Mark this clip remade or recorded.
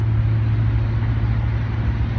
recorded